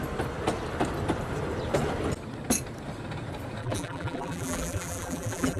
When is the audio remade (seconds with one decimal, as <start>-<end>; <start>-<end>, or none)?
3.6-5.6